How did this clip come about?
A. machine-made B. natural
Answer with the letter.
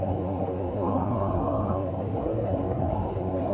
A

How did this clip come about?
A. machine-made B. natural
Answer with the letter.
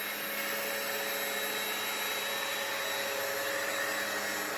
B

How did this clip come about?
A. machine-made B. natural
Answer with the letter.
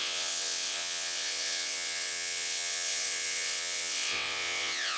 A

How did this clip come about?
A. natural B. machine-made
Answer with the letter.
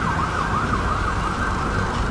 A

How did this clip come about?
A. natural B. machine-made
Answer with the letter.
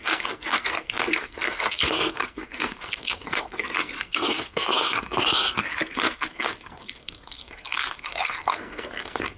B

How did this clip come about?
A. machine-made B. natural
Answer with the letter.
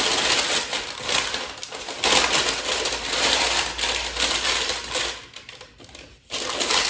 B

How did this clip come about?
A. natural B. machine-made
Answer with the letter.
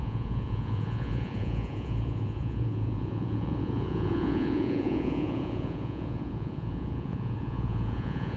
B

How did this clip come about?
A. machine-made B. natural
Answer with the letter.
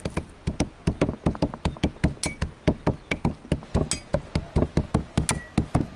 B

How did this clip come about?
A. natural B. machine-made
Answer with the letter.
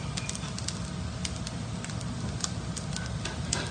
A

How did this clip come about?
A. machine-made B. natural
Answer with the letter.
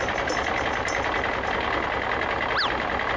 B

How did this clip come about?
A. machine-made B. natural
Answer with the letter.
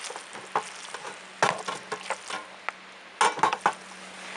B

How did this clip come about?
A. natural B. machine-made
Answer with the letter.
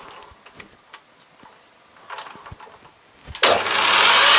A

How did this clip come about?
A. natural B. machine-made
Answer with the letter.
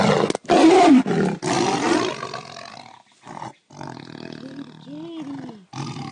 A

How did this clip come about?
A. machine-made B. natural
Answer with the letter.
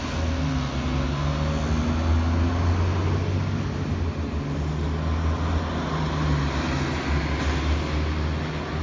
B